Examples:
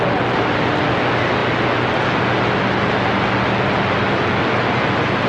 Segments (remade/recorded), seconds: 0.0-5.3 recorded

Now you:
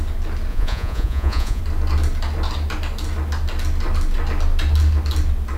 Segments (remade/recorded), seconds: 0.0-0.5 recorded; 0.5-1.6 remade; 1.6-5.6 recorded